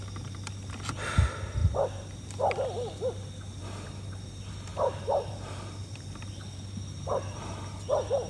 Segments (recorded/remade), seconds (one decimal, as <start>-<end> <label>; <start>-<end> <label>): 0.0-8.3 recorded

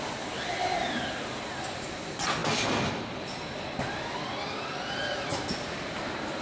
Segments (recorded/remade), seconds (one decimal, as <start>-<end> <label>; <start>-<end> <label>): 0.0-6.4 recorded

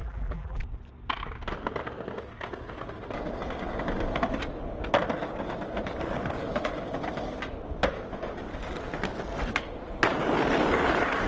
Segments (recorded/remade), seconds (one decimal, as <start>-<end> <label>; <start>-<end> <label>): 0.0-0.6 remade; 0.6-11.3 recorded

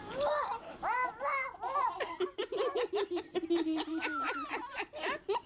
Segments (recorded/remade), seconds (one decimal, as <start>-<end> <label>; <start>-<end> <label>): 0.0-2.5 remade; 2.5-3.2 recorded; 3.2-5.5 remade

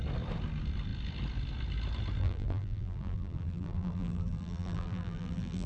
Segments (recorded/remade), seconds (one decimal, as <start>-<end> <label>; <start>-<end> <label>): 0.0-2.2 recorded; 2.2-5.7 remade